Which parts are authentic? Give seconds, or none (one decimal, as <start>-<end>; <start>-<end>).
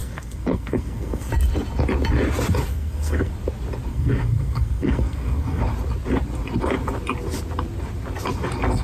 1.3-2.7; 3.3-3.9; 5.6-8.8